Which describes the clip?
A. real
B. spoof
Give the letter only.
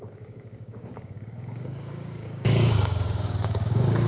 B